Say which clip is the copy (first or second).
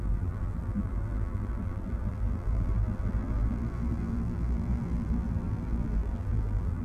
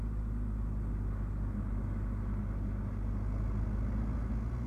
first